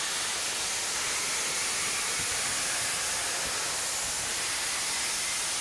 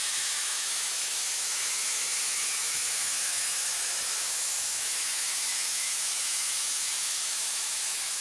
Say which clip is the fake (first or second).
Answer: second